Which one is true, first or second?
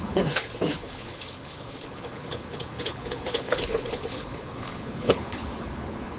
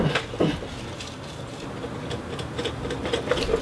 second